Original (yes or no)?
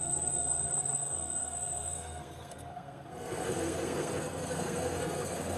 no